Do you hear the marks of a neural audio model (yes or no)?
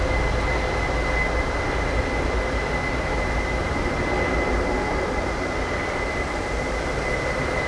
no